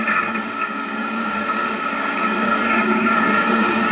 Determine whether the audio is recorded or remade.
remade